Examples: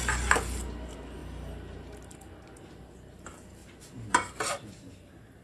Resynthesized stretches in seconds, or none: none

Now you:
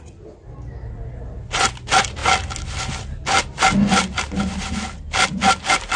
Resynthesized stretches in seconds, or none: none

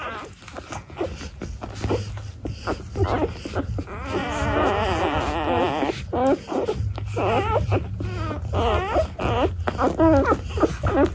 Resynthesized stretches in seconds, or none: none

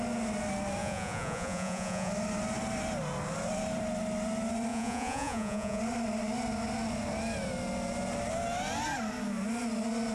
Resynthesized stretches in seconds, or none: 0.8-2.1 (vocoder, Vocos); 4.7-5.8

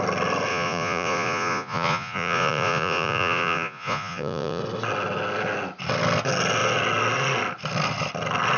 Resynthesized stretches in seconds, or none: 0.5-4.6 (vocoder, Vocos)

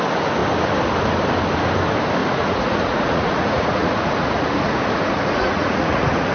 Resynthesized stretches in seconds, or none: 2.2-6.3 (vocoder, Vocos)